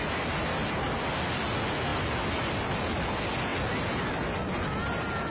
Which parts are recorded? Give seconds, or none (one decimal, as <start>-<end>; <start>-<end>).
0.0-5.3